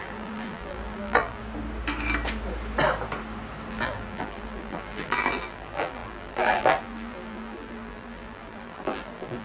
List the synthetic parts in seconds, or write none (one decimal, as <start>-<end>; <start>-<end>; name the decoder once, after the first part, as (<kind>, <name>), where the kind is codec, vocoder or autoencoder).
0.0-1.4 (vocoder, BigVGAN v2); 3.7-9.4